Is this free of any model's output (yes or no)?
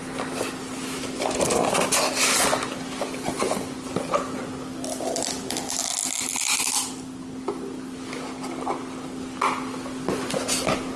yes